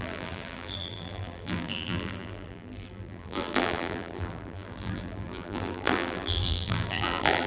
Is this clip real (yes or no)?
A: no